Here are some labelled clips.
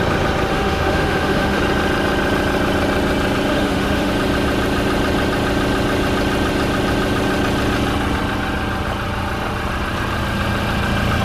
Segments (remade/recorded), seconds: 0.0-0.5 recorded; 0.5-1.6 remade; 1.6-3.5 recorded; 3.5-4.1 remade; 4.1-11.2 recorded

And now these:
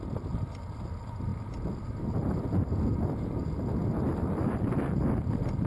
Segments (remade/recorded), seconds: 0.0-5.7 recorded

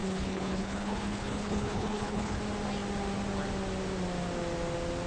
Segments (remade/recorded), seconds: 0.0-2.4 remade; 2.4-5.1 recorded

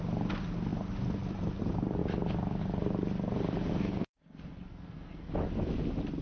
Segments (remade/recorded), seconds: 0.0-3.7 recorded; 3.7-5.3 remade; 5.3-6.2 recorded

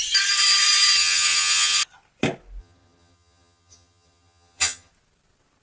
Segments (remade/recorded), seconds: 0.0-1.0 recorded; 1.0-1.8 remade; 1.8-2.6 recorded; 2.6-4.9 remade; 4.9-5.6 recorded

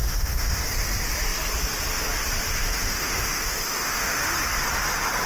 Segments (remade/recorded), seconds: 0.0-0.7 remade; 0.7-2.6 recorded; 2.6-4.2 remade; 4.2-5.3 recorded